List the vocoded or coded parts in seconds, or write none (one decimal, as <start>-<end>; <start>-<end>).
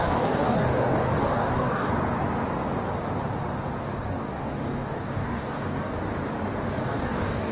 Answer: 0.0-1.9; 3.8-6.0; 6.6-7.5